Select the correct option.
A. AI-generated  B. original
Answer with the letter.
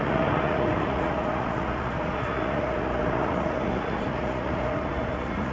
A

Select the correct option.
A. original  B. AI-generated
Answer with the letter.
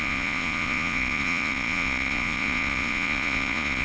B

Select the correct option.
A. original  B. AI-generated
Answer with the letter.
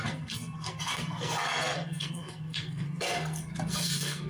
B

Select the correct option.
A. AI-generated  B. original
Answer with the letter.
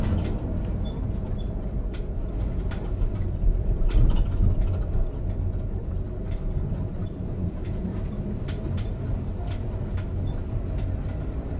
B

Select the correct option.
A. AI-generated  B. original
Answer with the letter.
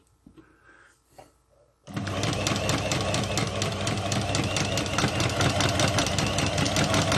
B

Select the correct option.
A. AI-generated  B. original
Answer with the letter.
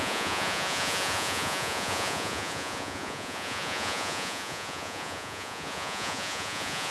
A